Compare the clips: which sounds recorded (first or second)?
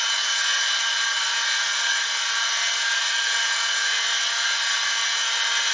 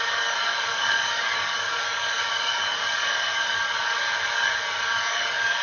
first